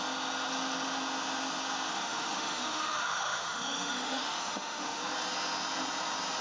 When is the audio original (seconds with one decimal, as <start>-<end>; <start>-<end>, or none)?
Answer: 0.0-1.9; 5.0-6.4